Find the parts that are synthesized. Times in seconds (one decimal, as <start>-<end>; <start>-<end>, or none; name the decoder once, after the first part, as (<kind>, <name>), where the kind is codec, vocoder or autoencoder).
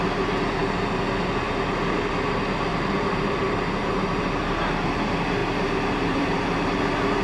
2.7-3.8 (vocoder, BigVGAN v2); 5.4-6.8